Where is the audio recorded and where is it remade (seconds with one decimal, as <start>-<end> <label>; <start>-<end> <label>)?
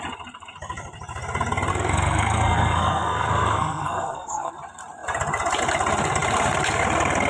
0.0-1.7 recorded; 1.7-4.5 remade; 4.5-7.3 recorded